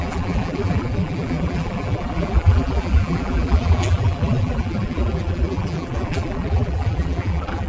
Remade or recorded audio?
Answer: remade